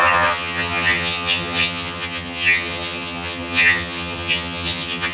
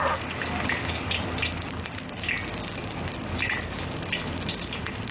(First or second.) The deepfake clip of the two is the first